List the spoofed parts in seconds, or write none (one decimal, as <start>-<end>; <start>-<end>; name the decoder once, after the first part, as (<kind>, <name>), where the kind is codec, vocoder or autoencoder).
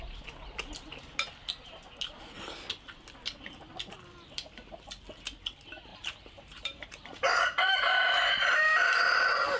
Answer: 5.9-8.8 (vocoder, BigVGAN v2)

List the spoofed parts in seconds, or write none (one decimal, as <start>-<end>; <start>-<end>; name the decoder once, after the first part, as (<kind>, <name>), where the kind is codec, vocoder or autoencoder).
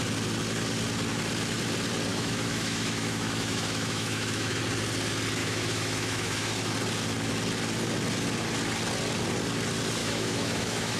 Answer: 2.1-4.6 (autoencoder, DAC-VAE); 5.4-6.5; 10.0-11.0